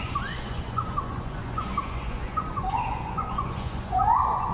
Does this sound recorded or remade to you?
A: remade